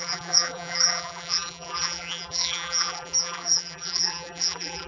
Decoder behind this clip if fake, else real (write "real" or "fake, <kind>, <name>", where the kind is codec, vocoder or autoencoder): fake, vocoder, BigVGAN v2